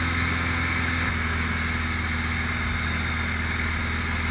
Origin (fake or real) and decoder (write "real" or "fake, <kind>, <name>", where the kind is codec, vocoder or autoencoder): real